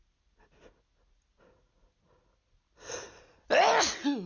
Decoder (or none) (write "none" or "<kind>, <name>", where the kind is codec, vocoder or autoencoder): none